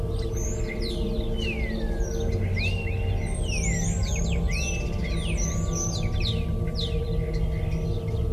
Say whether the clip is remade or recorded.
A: recorded